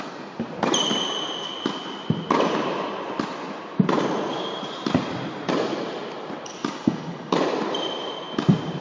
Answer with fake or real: real